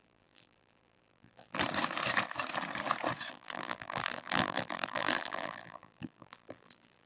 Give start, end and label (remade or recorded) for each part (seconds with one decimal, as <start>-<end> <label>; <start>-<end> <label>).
0.0-1.6 remade; 1.6-3.3 recorded; 3.3-7.1 remade